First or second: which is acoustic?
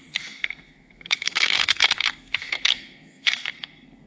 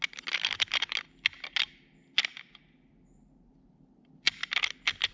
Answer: second